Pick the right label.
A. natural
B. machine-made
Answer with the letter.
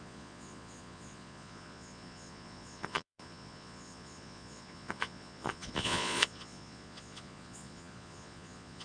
B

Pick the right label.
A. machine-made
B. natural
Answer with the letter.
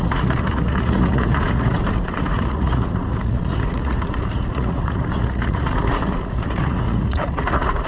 A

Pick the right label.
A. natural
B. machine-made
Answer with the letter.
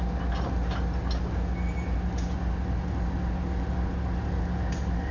A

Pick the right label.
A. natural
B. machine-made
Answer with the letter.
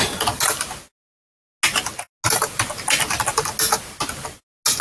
A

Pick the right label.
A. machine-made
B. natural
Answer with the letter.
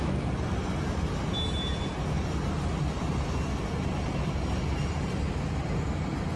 B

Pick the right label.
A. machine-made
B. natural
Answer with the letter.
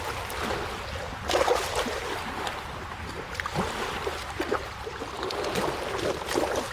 B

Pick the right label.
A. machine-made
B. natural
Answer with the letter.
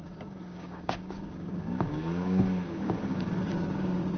A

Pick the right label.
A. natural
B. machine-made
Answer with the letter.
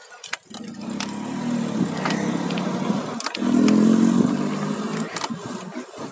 A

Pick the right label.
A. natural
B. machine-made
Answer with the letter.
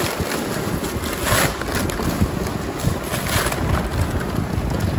A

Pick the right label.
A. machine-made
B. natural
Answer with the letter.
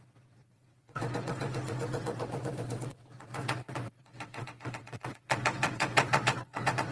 A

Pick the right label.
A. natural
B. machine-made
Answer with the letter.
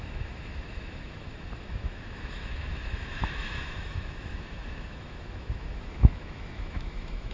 B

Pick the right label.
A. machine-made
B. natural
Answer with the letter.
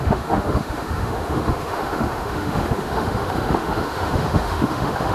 A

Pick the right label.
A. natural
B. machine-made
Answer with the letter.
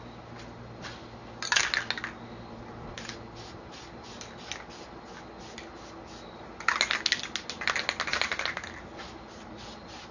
A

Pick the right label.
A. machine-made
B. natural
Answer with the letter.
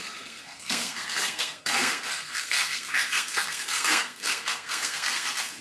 A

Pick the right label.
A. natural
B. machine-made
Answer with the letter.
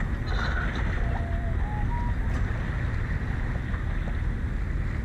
A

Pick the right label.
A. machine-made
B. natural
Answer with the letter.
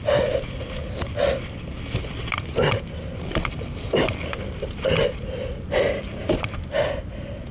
B